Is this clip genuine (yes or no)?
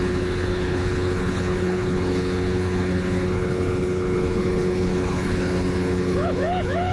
no